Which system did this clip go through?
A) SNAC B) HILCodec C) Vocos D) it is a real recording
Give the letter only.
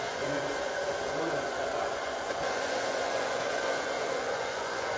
C